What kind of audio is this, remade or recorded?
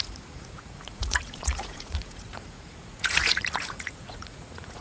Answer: remade